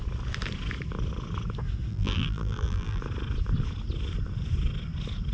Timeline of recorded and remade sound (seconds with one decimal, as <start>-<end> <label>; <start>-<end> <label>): 0.0-1.9 recorded; 1.9-3.0 remade; 3.0-5.3 recorded